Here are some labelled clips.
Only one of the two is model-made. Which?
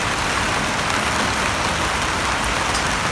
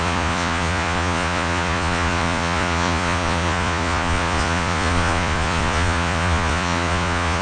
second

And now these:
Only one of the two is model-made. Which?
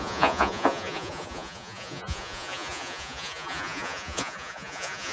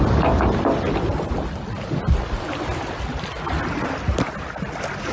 first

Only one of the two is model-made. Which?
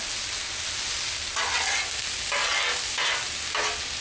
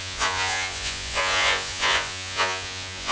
second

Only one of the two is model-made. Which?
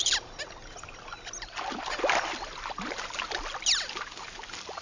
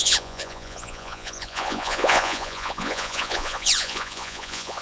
second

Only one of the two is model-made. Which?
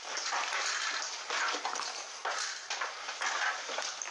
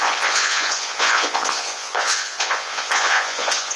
second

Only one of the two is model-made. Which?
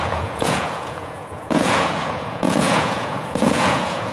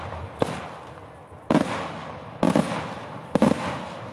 first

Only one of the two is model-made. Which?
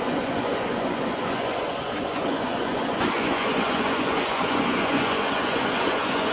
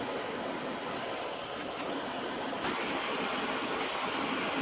first